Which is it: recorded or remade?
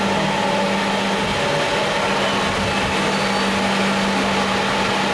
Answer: recorded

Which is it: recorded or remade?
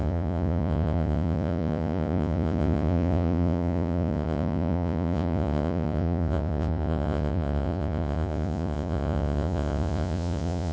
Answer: remade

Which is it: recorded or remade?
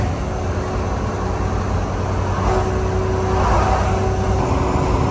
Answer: recorded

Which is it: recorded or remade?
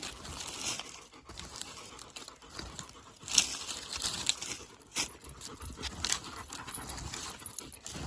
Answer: recorded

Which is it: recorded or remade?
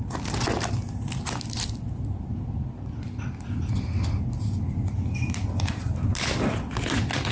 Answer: recorded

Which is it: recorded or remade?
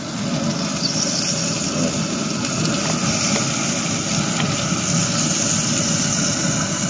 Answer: recorded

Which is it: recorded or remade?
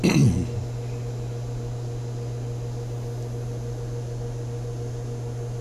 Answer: recorded